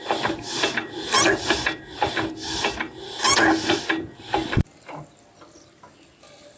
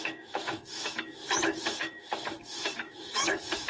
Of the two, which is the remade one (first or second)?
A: second